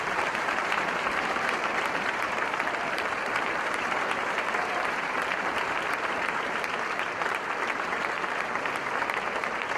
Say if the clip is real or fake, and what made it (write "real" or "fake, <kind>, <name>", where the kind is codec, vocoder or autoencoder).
fake, vocoder, BigVGAN v2